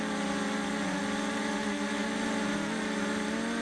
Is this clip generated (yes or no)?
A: no